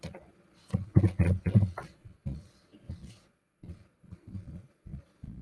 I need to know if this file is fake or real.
fake